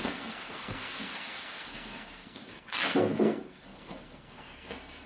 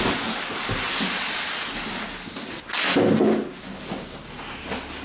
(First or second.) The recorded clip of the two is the second